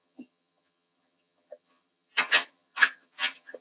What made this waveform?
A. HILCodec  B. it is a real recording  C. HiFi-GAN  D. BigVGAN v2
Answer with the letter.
C